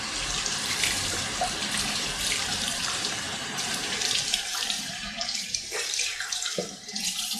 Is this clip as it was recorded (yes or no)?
no